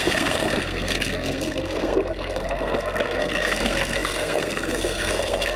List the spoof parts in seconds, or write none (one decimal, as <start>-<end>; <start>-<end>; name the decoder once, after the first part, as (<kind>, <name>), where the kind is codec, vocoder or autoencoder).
0.0-5.6 (codec, SNAC)